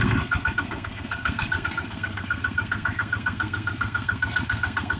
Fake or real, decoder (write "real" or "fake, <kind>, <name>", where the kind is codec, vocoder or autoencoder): fake, codec, SNAC